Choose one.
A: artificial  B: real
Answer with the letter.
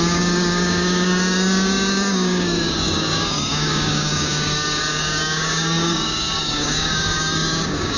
A